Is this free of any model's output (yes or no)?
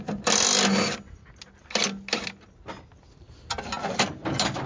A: yes